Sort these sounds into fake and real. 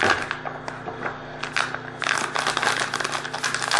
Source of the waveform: real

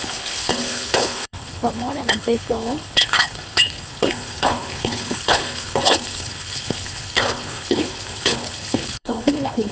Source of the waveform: fake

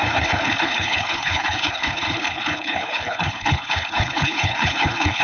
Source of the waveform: fake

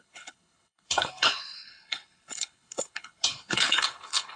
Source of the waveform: fake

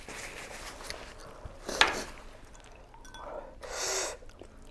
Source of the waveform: real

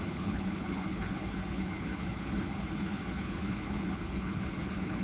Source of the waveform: fake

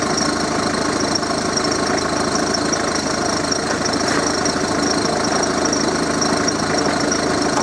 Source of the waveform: real